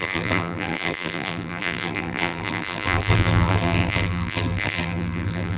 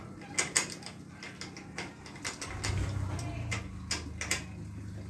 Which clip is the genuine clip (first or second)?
second